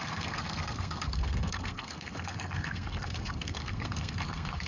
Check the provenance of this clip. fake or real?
fake